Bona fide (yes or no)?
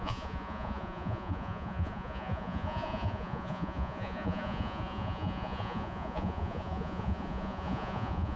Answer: no